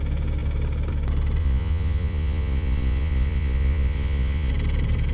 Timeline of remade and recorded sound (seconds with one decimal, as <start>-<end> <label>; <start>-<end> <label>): 0.0-1.4 recorded; 1.4-4.5 remade; 4.5-5.1 recorded